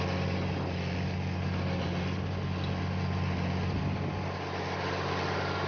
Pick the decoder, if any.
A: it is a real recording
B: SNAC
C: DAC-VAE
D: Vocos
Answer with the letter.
A